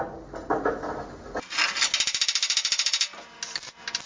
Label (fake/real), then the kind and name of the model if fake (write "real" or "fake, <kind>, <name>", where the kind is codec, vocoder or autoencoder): real